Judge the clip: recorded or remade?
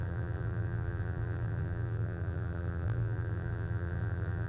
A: remade